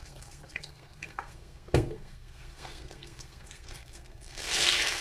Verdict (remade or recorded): remade